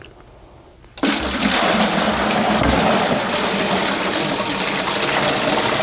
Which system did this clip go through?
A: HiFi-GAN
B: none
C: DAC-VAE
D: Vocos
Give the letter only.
B